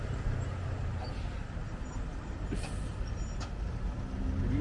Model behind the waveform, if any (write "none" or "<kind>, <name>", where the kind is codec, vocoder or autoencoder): none